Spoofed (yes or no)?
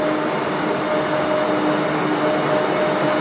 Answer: no